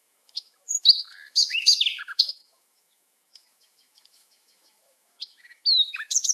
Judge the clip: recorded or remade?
remade